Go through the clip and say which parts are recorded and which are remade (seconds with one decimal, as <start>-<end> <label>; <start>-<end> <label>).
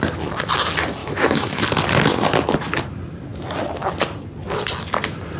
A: 0.0-1.0 recorded; 1.0-1.6 remade; 1.6-5.4 recorded